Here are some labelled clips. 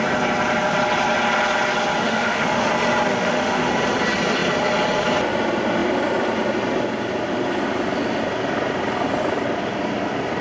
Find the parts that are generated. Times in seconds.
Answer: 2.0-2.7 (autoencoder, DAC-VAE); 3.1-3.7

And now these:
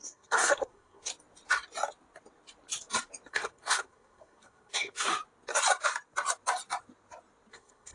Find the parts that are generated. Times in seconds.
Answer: 0.0-1.1 (codec, SNAC); 3.3-5.1; 7.5-7.9

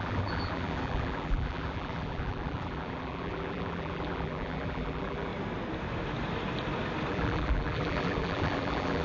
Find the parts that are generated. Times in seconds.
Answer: 0.0-5.3 (vocoder, BigVGAN v2); 7.1-9.0

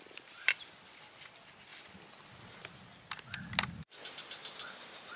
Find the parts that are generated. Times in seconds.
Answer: none

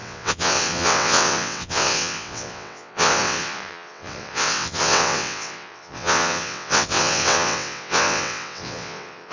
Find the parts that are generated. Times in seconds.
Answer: 0.0-9.3 (vocoder, WaveNeXt)